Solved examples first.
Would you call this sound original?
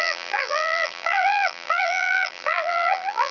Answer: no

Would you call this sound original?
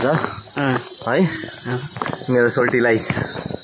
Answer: yes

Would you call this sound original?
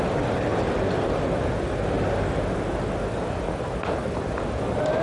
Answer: yes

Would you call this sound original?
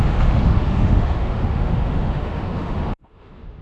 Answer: no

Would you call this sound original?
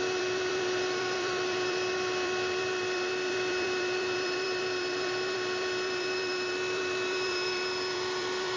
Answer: no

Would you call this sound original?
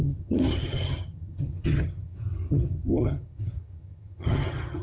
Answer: no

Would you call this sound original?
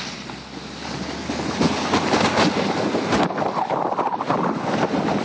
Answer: yes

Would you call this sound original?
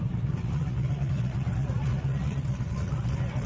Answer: no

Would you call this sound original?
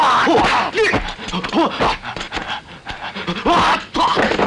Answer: yes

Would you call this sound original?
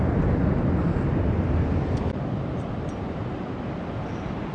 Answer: yes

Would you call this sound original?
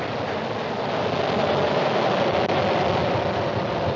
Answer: yes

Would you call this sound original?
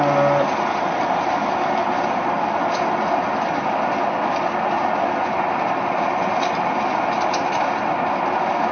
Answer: yes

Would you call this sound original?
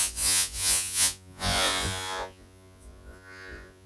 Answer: no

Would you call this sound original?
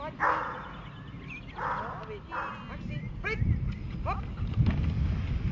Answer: yes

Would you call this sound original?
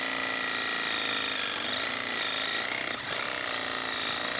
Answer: yes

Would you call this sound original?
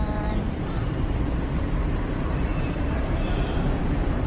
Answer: no